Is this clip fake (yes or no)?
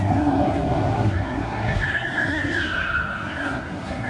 yes